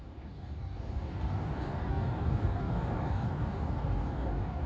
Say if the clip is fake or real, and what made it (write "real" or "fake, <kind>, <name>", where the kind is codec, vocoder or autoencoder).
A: fake, codec, DAC